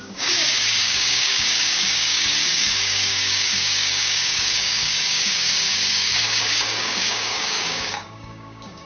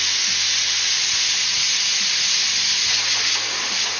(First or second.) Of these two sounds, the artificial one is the first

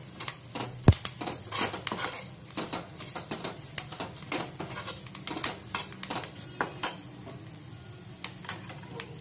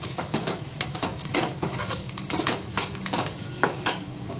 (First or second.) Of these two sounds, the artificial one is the second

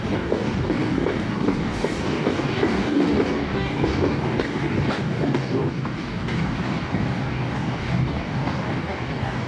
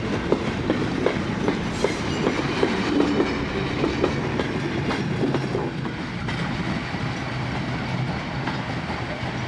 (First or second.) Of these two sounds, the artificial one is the first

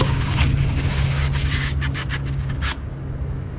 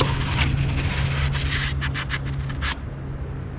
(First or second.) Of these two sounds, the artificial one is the first